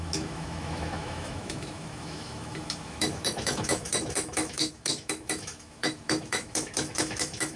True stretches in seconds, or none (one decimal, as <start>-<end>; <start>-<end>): none